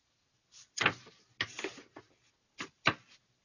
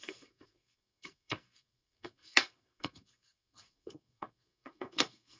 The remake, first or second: second